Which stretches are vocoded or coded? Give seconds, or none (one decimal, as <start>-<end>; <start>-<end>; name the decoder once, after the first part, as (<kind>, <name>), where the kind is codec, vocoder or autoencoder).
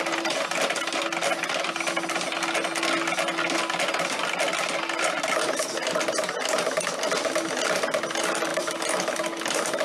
none